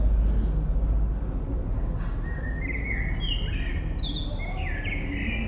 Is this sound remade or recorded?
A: recorded